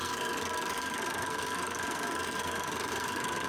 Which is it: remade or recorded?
remade